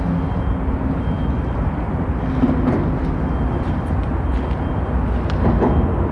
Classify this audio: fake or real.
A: real